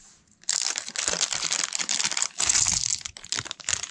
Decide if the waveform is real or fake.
real